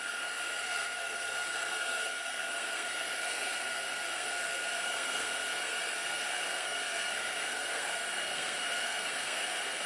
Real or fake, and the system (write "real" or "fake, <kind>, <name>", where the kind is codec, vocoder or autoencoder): fake, codec, SNAC